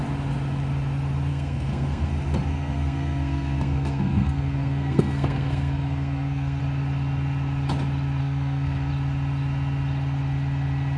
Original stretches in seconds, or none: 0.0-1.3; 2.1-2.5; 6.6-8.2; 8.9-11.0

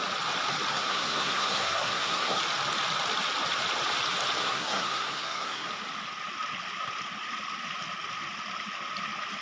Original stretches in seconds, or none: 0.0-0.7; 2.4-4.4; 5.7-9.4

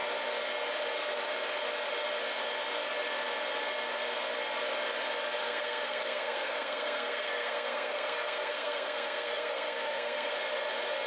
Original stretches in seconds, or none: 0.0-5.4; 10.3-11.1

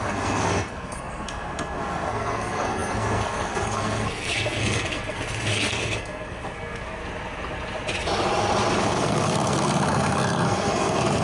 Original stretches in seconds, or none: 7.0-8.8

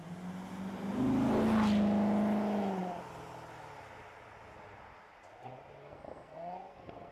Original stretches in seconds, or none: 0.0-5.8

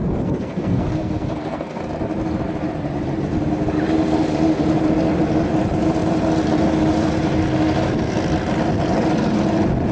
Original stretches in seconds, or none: 1.8-9.9